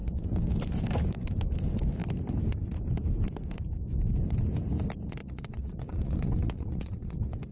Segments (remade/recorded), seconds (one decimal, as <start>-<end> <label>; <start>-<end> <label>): 0.0-0.5 remade; 0.5-5.2 recorded; 5.2-7.5 remade